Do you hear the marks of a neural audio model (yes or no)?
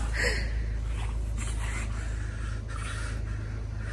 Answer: no